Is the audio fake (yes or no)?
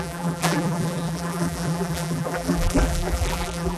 yes